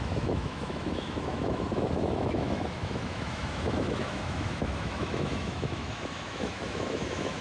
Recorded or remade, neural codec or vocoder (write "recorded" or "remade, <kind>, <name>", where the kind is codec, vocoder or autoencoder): remade, autoencoder, DAC-VAE